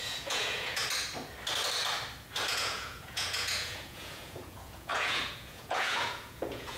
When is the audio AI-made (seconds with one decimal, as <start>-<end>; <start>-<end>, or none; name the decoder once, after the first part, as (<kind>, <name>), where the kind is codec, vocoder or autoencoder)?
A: 0.0-0.8 (vocoder, Vocos); 2.5-6.8